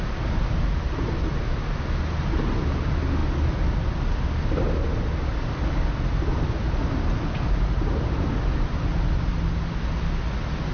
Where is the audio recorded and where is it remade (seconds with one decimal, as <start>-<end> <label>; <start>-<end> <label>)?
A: 0.0-10.7 recorded